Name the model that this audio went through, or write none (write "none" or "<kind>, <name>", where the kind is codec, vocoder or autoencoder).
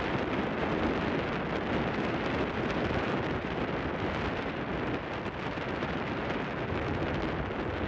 none